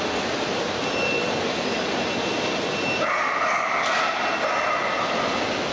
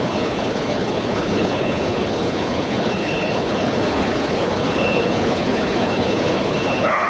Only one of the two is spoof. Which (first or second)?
second